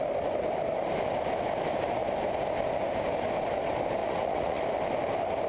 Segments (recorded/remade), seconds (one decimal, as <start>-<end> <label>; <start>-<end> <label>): 0.0-4.0 recorded; 4.0-4.6 remade; 4.6-5.5 recorded